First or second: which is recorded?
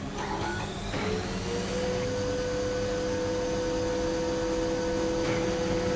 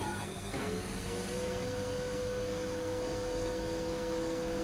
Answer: first